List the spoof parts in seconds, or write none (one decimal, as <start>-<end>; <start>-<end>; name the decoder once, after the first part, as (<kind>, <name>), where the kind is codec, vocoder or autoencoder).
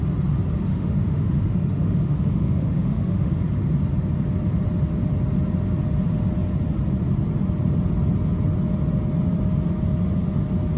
0.7-3.3 (autoencoder, DAC-VAE)